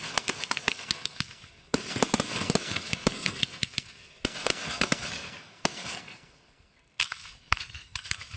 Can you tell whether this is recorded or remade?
remade